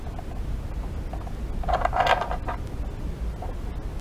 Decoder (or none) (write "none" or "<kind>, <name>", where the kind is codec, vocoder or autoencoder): none